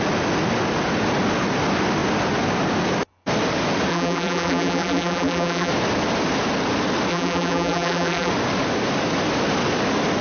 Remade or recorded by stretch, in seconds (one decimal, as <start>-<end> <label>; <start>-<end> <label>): 0.0-3.9 recorded; 3.9-5.7 remade; 5.7-7.1 recorded; 7.1-8.3 remade; 8.3-10.2 recorded